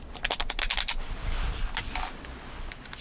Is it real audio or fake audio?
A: real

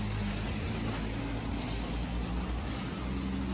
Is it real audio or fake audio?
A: real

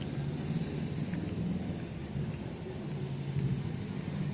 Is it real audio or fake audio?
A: real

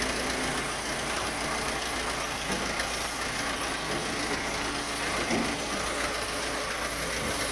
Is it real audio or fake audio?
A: real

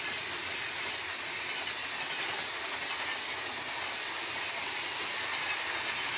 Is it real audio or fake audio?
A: real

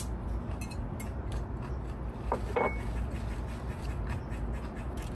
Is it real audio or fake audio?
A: real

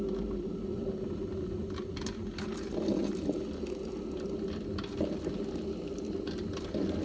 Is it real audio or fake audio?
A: real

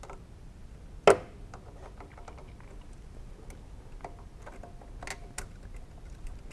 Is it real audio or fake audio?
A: real